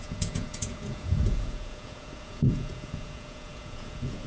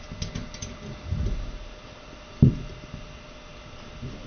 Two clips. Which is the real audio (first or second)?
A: second